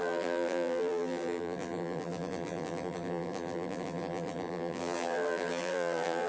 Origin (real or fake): fake